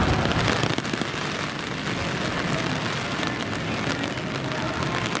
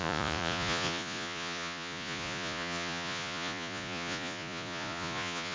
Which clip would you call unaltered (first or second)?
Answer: first